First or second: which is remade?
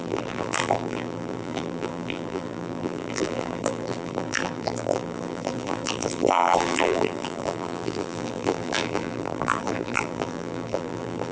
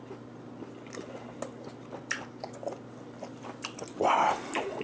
first